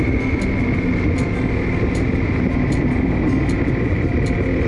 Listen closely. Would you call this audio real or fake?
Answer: real